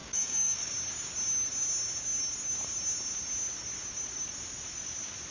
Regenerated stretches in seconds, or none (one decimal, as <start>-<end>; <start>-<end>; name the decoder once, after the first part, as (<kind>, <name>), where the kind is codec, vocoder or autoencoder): 0.0-0.7 (codec, DAC)